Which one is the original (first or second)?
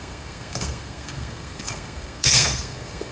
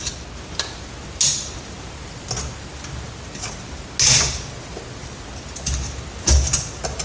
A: second